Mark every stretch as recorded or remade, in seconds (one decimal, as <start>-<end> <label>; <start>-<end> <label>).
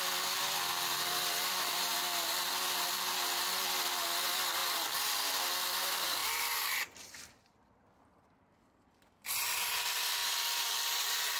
0.0-4.6 remade; 4.6-5.8 recorded; 5.8-6.2 remade; 6.2-7.9 recorded; 7.9-10.2 remade; 10.2-11.4 recorded